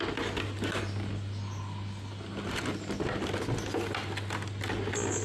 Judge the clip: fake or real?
real